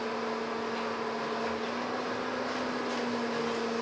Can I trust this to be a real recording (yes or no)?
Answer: yes